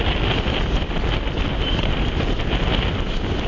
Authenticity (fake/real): real